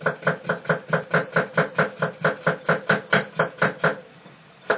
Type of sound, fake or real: real